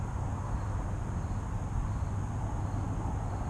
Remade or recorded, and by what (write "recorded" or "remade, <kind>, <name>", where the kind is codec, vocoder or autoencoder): recorded